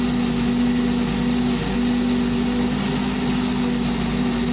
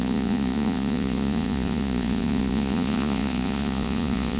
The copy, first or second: second